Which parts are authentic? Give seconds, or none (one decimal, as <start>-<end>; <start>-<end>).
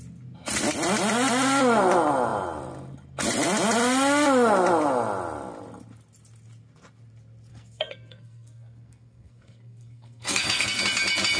0.0-7.5; 10.8-11.4